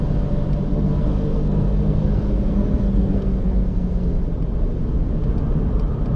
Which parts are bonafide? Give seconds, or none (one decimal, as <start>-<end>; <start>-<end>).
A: 0.0-0.7; 4.2-6.2